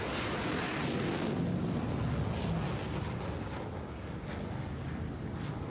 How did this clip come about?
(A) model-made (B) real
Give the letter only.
B